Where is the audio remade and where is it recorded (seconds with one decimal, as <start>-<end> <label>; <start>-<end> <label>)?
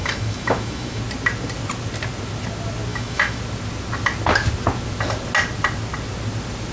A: 0.0-1.0 remade; 1.0-2.9 recorded; 2.9-3.4 remade; 3.4-6.7 recorded